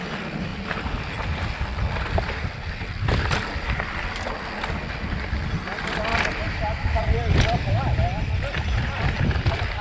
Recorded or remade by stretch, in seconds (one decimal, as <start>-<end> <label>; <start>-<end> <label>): 0.0-9.8 recorded